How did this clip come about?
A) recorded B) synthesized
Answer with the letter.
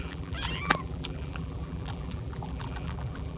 B